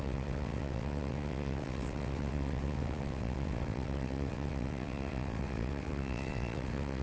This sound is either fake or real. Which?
fake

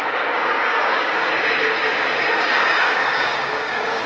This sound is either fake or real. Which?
fake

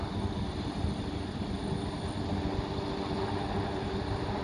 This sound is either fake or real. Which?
real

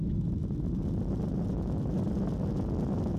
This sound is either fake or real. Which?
real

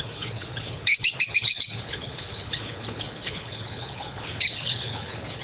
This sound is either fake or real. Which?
fake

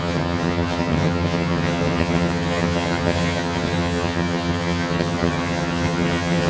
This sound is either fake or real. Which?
fake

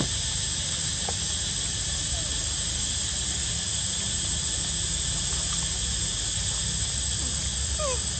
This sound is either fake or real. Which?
real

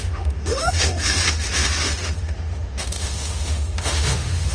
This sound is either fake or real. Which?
fake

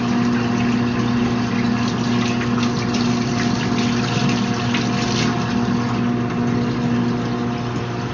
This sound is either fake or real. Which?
real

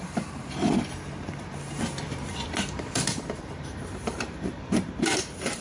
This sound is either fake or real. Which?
fake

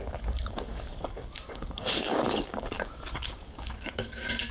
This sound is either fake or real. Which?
fake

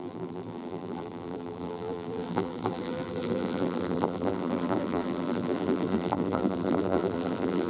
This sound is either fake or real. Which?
fake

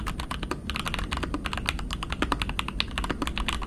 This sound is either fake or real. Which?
real